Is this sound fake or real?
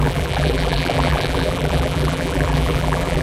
fake